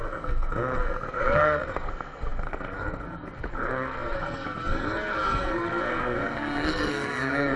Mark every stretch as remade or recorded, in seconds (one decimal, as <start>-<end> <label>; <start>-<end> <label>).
0.0-7.6 remade